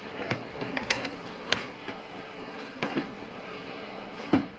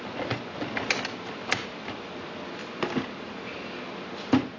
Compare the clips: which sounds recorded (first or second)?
second